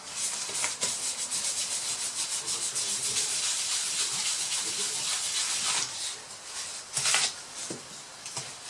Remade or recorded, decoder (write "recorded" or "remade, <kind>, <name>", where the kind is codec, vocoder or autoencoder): recorded